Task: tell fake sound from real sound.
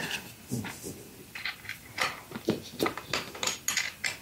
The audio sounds real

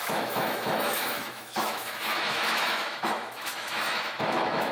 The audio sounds fake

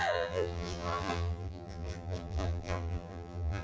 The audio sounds fake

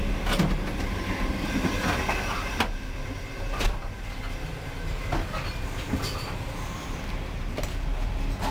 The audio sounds real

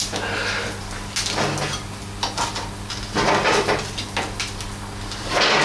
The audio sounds real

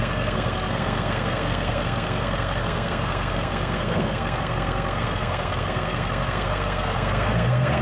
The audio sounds fake